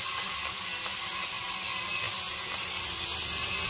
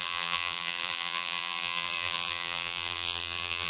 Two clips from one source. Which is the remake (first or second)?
second